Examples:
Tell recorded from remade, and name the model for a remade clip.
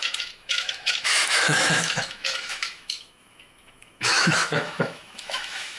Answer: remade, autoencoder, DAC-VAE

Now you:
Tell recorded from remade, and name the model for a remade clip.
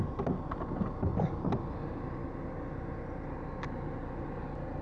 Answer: recorded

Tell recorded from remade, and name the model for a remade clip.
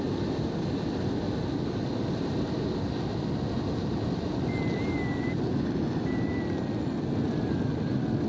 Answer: recorded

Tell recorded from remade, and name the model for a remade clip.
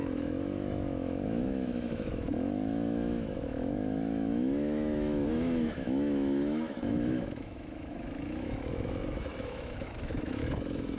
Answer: remade, autoencoder, DAC-VAE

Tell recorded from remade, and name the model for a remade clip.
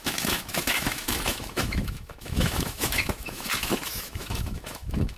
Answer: remade, autoencoder, DAC-VAE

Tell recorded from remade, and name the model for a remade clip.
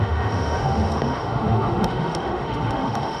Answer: remade, autoencoder, DAC-VAE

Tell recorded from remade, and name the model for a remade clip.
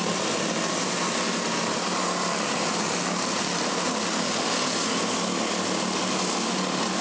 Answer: recorded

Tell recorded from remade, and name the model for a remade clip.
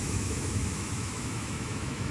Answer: remade, autoencoder, DAC-VAE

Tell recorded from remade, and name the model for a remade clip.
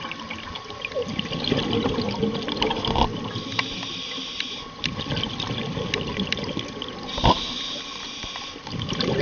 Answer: recorded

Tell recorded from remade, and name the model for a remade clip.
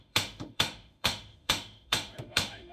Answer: remade, autoencoder, DAC-VAE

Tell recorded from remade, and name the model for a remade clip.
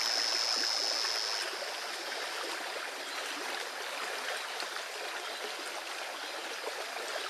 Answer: recorded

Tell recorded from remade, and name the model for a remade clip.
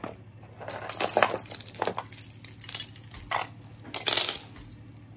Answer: recorded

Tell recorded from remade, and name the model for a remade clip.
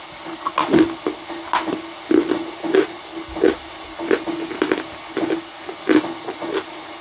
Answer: recorded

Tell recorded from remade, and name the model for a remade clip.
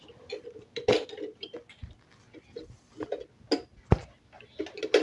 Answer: recorded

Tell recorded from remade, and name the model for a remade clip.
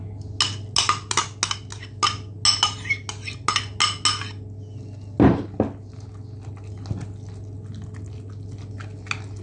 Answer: recorded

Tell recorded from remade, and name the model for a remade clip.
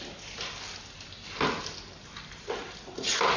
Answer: recorded